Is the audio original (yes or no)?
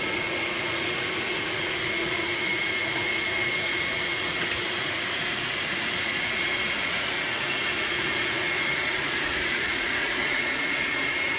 no